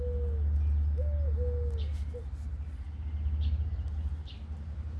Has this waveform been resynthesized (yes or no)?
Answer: no